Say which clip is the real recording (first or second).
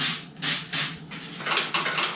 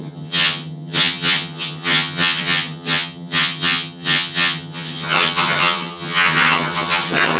first